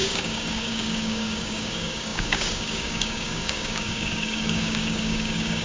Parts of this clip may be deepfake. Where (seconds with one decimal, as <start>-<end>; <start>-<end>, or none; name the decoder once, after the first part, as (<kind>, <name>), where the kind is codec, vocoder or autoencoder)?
0.0-5.6 (codec, DAC)